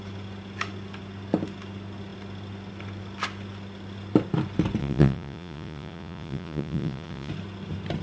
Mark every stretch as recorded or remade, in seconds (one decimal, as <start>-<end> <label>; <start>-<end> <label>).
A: 0.0-4.8 recorded; 4.8-7.3 remade; 7.3-8.0 recorded